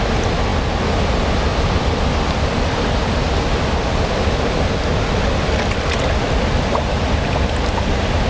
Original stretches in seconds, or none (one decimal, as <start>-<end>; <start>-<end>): 0.0-1.5; 3.6-8.3